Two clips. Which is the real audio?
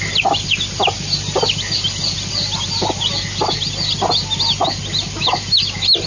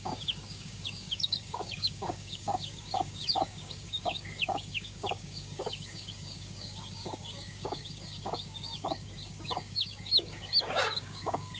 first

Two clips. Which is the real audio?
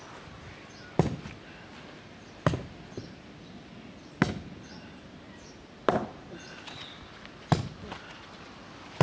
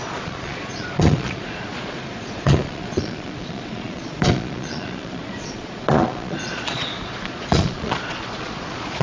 first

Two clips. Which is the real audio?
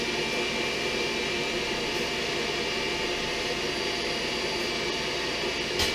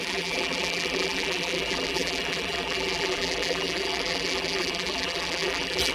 first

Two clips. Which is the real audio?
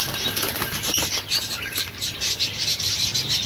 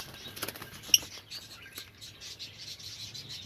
second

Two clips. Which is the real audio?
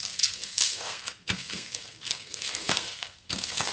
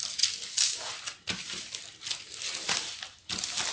second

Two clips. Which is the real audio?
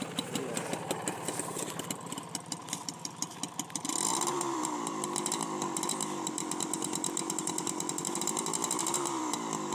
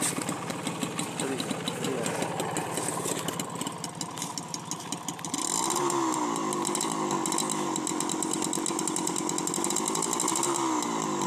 second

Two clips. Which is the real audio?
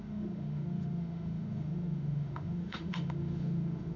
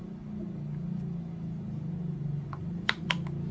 second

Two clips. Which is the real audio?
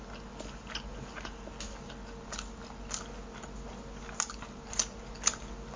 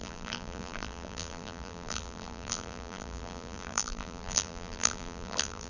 first